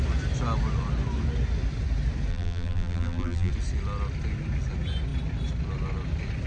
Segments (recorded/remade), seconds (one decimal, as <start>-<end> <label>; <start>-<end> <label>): 0.0-2.3 recorded; 2.3-3.5 remade; 3.5-6.5 recorded